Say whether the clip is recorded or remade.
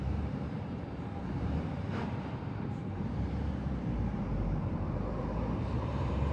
remade